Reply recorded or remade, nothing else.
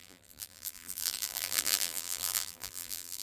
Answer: remade